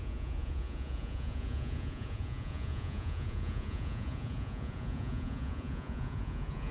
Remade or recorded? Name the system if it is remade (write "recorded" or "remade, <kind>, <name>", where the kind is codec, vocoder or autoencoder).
remade, vocoder, Vocos